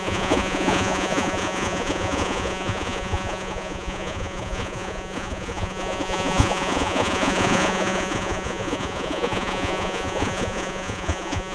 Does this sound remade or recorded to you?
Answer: remade